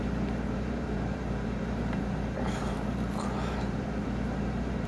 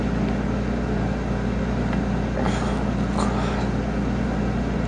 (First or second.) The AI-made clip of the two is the first